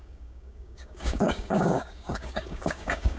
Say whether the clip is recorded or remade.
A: remade